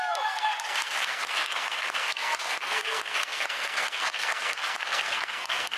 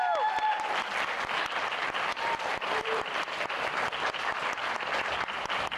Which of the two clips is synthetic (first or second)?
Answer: first